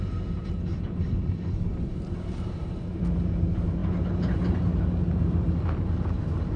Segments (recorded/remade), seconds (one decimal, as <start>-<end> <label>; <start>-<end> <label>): 0.0-1.7 recorded; 1.7-2.8 remade; 2.8-6.6 recorded